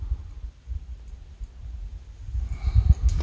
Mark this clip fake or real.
real